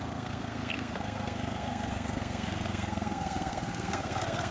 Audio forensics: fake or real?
fake